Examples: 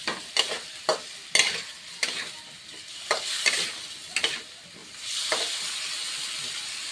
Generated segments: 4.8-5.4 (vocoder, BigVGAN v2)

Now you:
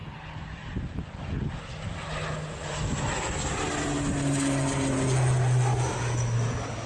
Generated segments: none

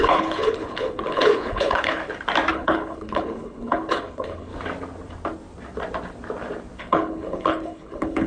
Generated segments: 0.0-2.0 (codec, HILCodec); 2.5-4.5; 6.8-8.3

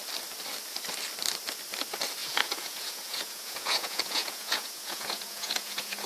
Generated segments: 2.2-6.1 (vocoder, Vocos)

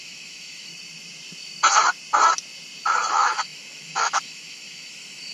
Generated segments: 0.0-0.7 (autoencoder, DAC-VAE); 3.1-5.3

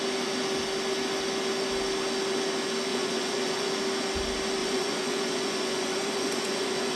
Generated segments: 2.9-3.7 (vocoder, Vocos); 4.6-7.0

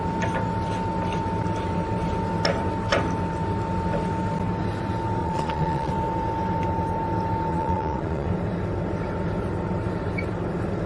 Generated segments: 5.2-5.9 (vocoder, Vocos); 7.5-8.3

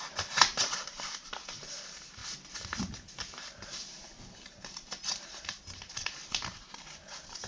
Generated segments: 0.0-2.2 (vocoder, BigVGAN v2); 3.3-7.5